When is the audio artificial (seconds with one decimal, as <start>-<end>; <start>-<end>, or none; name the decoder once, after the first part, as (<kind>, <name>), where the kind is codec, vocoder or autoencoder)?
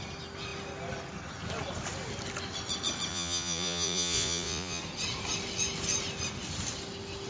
3.1-4.8 (vocoder, Vocos)